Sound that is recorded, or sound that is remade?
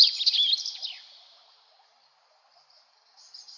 recorded